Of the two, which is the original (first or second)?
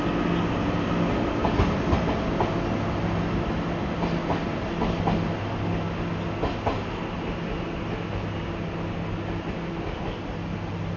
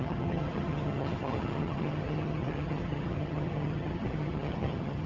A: first